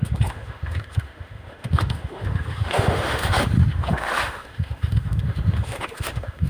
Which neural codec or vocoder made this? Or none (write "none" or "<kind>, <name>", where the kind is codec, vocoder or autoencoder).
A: autoencoder, DAC-VAE